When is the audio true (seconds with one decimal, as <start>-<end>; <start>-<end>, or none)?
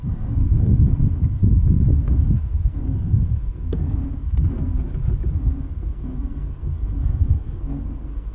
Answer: 1.4-2.0; 4.7-5.6